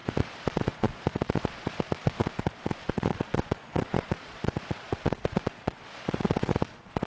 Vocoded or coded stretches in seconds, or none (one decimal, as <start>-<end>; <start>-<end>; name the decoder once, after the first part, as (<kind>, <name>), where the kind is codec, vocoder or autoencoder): 0.0-7.1 (vocoder, Vocos)

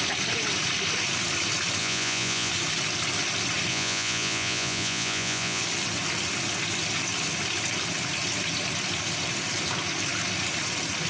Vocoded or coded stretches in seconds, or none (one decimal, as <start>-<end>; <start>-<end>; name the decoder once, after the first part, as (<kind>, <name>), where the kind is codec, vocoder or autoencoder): 1.8-2.5 (vocoder, Vocos); 3.7-5.6

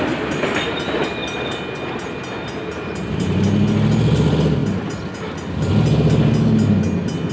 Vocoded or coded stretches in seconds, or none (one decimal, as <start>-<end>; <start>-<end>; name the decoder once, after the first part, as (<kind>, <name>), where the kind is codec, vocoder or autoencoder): none

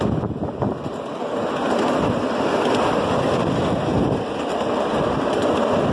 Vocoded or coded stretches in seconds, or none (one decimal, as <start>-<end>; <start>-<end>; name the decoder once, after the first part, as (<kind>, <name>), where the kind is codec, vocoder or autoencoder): none

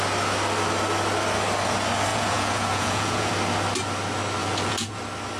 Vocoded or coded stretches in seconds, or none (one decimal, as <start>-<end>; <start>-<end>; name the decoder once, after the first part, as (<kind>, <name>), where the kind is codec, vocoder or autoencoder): 2.1-3.3 (vocoder, Vocos); 4.4-5.0

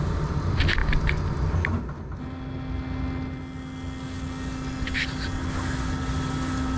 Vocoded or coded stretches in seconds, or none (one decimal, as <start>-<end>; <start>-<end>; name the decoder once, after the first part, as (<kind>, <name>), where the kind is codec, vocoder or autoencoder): none